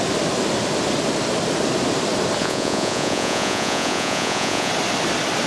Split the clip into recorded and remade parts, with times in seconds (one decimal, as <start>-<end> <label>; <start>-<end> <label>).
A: 0.0-2.4 recorded; 2.4-4.7 remade; 4.7-5.5 recorded